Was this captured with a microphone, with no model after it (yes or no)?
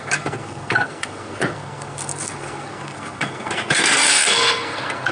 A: no